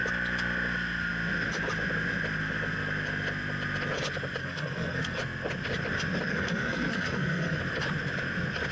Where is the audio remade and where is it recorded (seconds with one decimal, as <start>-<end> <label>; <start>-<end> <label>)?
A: 0.0-4.4 recorded; 4.4-5.2 remade; 5.2-6.3 recorded; 6.3-7.6 remade; 7.6-8.7 recorded